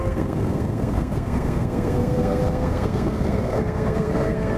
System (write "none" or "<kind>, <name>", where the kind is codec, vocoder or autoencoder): codec, SNAC